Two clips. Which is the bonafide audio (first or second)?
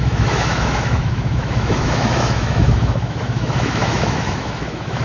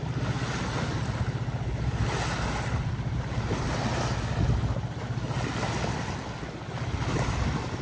second